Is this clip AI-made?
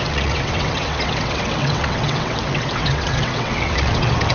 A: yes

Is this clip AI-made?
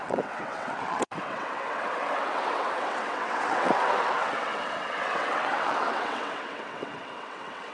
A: yes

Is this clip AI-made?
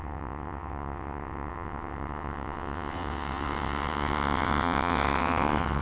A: yes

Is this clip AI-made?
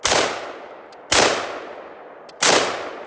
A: no